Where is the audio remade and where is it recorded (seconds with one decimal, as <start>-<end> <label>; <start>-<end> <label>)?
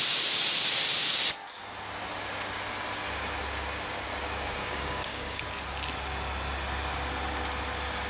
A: 0.0-4.6 recorded; 4.6-5.4 remade; 5.4-8.1 recorded